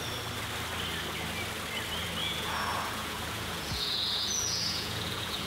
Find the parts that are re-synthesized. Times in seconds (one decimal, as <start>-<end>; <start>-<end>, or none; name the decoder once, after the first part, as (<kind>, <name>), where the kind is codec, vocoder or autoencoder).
2.2-5.5 (vocoder, Vocos)